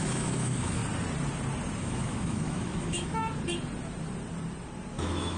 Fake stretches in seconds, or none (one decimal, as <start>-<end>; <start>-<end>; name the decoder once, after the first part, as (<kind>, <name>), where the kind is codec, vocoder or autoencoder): 0.0-0.8 (autoencoder, DAC-VAE); 1.8-3.2; 4.9-5.4

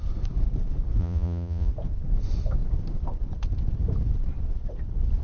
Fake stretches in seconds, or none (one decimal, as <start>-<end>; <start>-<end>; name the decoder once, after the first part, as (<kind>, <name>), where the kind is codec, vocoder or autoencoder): 1.0-1.7 (vocoder, Vocos)

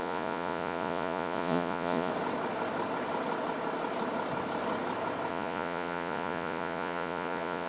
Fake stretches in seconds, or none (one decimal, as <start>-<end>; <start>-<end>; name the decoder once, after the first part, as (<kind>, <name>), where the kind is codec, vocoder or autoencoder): 0.0-2.1 (vocoder, Vocos); 5.3-7.7

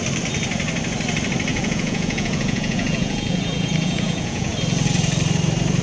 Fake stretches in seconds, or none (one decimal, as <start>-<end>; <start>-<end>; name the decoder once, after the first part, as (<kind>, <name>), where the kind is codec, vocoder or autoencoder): 1.5-4.5 (vocoder, Vocos)